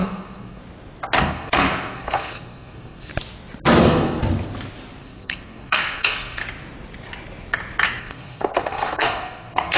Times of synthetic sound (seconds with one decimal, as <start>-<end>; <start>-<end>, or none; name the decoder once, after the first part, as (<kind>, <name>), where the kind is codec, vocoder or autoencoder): 0.0-0.6 (codec, SNAC); 1.2-3.1; 3.8-4.2; 5.0-6.4; 8.0-9.8